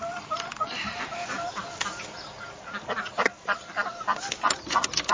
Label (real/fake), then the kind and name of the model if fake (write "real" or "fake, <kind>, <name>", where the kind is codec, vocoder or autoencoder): real